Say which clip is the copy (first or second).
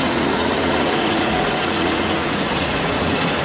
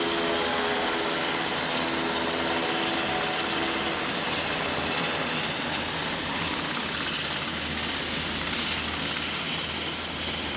first